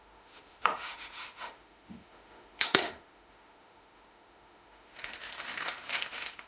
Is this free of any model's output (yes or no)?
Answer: no